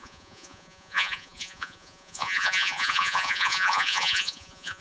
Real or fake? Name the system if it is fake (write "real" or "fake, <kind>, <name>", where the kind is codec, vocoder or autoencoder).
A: fake, vocoder, Vocos